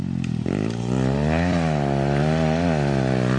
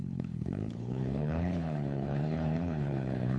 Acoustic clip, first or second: first